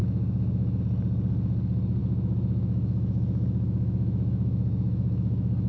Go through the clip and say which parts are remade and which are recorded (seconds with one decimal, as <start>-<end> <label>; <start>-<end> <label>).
0.0-0.8 remade; 0.8-2.0 recorded; 2.0-5.7 remade